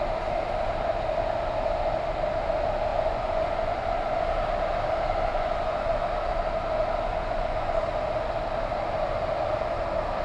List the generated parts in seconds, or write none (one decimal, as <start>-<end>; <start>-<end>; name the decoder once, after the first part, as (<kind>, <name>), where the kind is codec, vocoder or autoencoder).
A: 2.9-4.2 (vocoder, Vocos); 5.3-6.0; 7.1-7.8

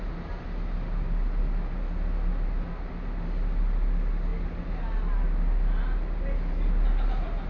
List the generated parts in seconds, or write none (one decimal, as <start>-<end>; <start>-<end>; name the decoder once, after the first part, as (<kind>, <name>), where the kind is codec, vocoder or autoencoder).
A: none